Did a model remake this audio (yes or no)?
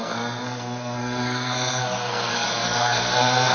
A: yes